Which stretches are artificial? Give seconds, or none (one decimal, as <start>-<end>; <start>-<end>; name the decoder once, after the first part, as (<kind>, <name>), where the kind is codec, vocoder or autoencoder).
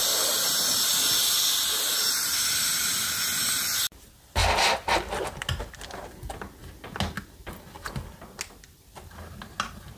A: none